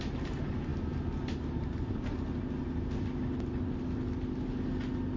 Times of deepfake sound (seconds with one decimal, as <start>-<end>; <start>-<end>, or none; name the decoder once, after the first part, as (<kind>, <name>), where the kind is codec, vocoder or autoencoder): none